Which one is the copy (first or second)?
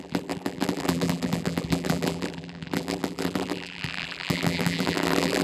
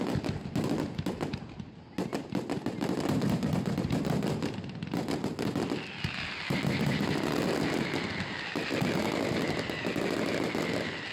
first